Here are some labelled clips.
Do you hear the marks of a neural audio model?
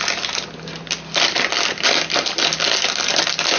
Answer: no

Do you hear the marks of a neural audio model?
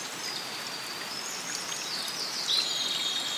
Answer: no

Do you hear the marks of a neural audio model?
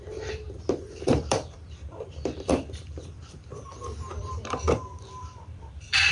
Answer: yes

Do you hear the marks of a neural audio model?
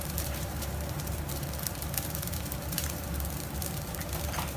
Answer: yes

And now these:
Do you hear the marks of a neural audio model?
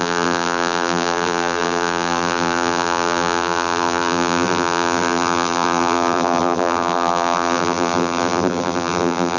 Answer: yes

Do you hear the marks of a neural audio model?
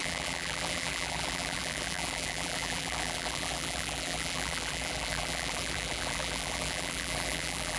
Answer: yes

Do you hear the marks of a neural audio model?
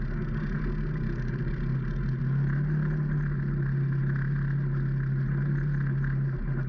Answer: no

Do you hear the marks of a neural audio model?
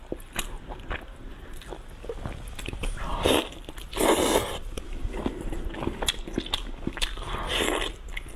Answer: no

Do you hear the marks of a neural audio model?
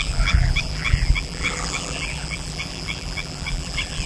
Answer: yes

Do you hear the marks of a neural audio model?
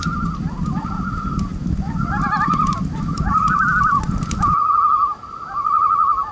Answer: no